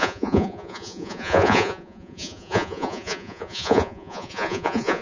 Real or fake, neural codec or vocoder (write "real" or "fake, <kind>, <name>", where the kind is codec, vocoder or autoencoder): fake, vocoder, Vocos